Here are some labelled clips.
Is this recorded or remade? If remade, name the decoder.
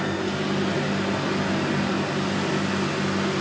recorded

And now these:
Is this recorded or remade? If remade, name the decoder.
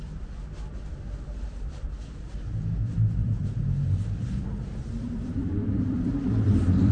remade, vocoder, BigVGAN v2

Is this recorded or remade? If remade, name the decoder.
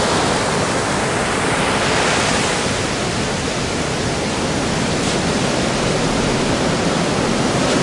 recorded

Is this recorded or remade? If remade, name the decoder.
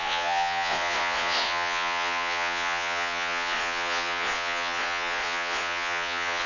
remade, vocoder, Vocos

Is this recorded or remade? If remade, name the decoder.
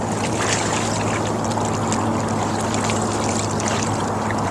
recorded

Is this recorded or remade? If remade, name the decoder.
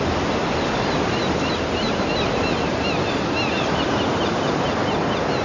recorded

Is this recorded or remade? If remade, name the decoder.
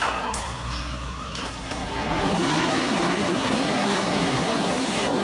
remade, codec, SNAC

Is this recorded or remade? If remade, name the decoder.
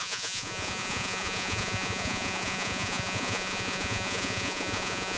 remade, vocoder, Vocos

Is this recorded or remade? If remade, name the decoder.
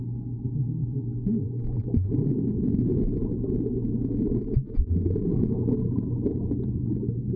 recorded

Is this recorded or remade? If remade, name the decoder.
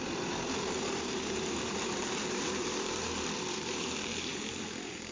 remade, vocoder, BigVGAN v2